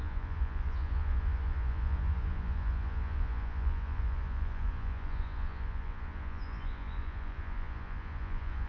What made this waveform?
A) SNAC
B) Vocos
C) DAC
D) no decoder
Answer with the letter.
B